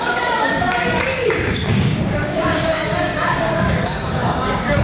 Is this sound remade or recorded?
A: remade